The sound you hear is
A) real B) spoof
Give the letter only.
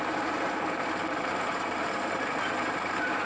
B